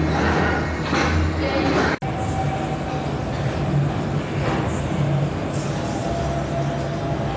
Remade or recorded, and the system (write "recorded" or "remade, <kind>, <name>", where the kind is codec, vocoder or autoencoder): recorded